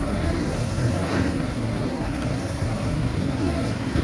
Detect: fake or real fake